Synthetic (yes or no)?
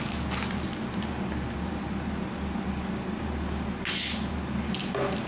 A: no